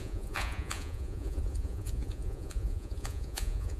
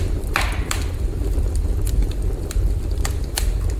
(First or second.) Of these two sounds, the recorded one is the second